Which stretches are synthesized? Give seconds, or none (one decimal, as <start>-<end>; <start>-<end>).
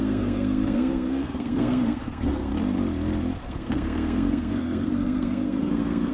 0.0-2.5; 3.4-6.1